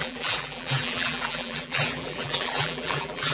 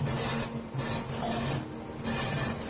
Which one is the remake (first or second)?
first